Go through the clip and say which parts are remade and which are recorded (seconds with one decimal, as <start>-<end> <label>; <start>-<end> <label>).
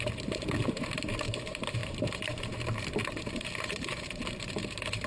0.0-5.1 remade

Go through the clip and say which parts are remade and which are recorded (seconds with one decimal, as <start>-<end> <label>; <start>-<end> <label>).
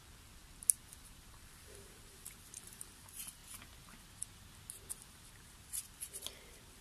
0.0-3.4 remade; 3.4-5.3 recorded; 5.3-6.8 remade